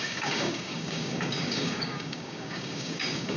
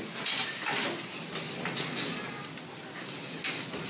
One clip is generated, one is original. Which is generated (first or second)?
first